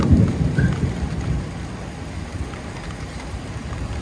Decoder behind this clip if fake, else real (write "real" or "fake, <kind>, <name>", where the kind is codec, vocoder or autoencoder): real